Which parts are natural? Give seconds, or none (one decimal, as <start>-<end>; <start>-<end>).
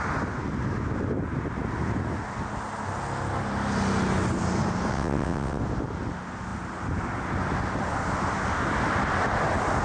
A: 0.0-4.9; 5.6-9.8